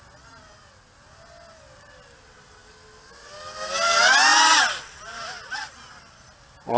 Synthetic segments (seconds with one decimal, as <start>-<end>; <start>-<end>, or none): none